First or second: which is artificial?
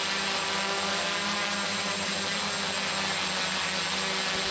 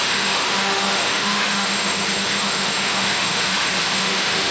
second